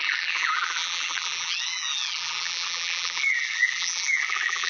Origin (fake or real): fake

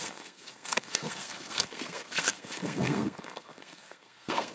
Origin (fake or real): fake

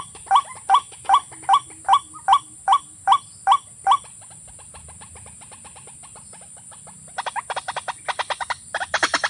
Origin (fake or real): real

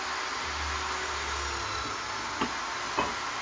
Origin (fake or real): real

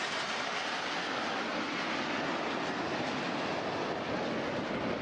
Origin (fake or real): real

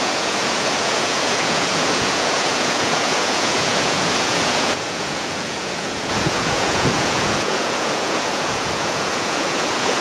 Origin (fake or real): fake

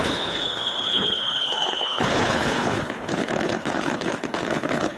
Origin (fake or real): fake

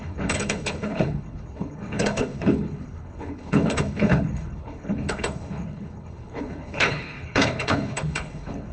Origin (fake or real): fake